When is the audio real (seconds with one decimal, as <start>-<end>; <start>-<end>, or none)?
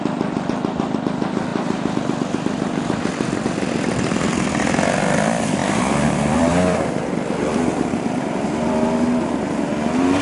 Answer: 0.0-1.5; 3.6-5.6